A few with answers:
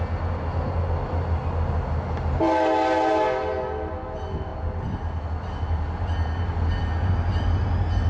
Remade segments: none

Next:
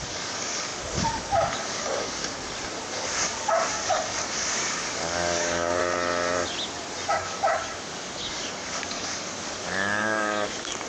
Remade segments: 0.0-2.2 (codec, DAC); 2.8-5.8; 7.1-10.9

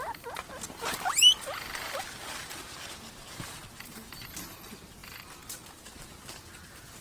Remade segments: none